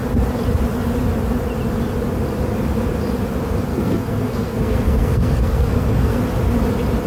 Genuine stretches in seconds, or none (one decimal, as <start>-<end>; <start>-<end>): 0.0-3.7; 6.2-7.1